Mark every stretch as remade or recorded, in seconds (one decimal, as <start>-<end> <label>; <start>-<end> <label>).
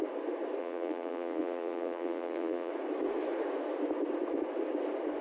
0.0-0.6 recorded; 0.6-2.7 remade; 2.7-5.2 recorded